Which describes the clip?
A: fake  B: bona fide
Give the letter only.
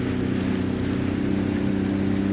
B